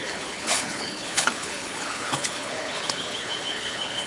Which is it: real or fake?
fake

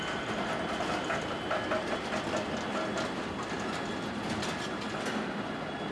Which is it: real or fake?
real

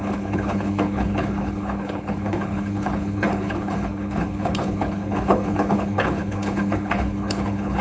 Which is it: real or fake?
fake